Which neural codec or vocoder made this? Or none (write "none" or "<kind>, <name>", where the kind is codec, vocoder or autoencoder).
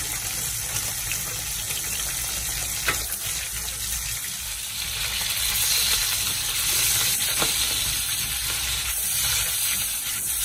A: none